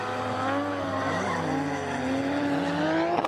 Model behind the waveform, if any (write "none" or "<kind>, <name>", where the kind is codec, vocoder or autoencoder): none